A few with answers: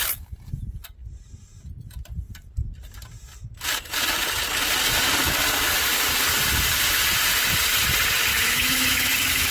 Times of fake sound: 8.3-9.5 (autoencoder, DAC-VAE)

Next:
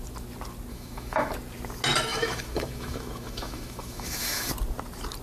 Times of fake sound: 0.7-1.3 (autoencoder, DAC-VAE); 2.1-4.5

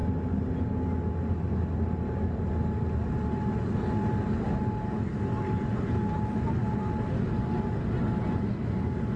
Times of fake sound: none

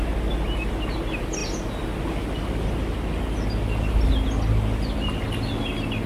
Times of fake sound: none

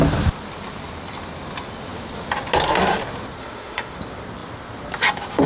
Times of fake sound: 3.4-3.9 (autoencoder, DAC-VAE)

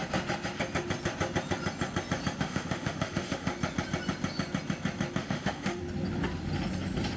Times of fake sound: 2.4-3.5 (autoencoder, DAC-VAE); 5.2-5.8

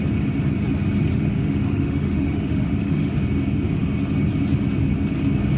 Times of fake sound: 1.1-3.1 (autoencoder, DAC-VAE)